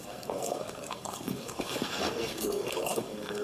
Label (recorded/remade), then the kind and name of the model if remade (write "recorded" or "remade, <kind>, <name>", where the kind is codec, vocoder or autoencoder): remade, codec, SNAC